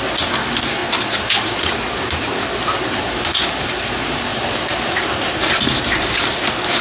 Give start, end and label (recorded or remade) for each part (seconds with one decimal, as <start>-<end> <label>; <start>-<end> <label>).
0.0-6.8 recorded